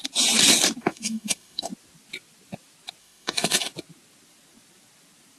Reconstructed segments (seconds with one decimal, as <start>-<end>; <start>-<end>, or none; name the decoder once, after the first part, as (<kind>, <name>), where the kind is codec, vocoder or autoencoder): 0.8-1.7 (autoencoder, DAC-VAE); 3.0-3.7